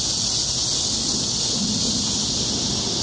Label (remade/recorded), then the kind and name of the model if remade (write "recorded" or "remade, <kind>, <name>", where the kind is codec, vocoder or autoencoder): recorded